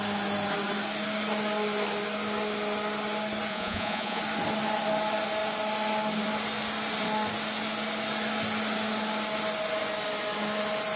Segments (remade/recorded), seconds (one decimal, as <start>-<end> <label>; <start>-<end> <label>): 0.0-3.5 recorded; 3.5-4.2 remade; 4.2-11.0 recorded